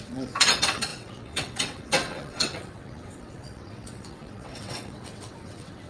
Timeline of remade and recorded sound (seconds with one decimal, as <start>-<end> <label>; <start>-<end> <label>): 0.0-5.9 remade